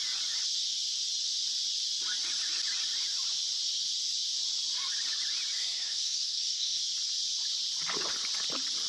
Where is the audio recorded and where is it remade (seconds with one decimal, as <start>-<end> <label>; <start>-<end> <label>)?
0.0-5.6 recorded; 5.6-6.8 remade; 6.8-8.9 recorded